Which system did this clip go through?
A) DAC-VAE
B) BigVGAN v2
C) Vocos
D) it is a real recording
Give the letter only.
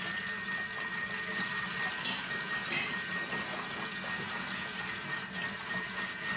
D